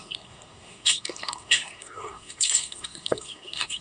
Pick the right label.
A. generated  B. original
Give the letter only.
A